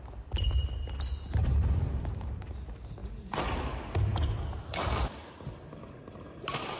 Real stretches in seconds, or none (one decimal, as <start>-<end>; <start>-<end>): 0.0-1.4; 2.5-3.0; 3.5-5.8